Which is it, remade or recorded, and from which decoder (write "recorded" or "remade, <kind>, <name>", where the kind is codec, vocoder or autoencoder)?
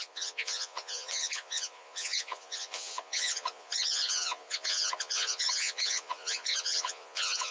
remade, vocoder, Vocos